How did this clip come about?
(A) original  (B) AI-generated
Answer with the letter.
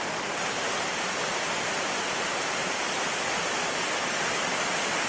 A